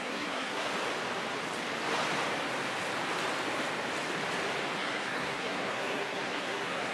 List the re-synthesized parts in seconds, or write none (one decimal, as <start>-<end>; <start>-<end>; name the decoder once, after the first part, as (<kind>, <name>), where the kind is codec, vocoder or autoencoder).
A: 0.0-0.7 (codec, SNAC); 4.8-6.9